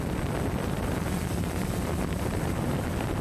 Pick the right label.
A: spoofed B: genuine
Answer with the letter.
B